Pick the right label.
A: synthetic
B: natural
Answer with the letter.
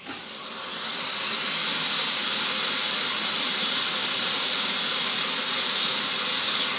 B